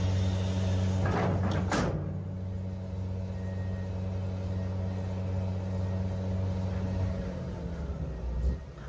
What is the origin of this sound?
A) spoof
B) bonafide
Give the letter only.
B